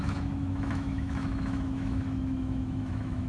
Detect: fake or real fake